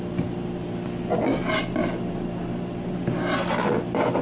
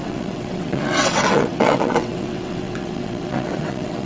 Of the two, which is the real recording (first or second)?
first